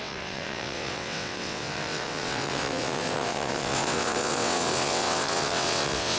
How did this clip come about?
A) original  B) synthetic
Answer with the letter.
B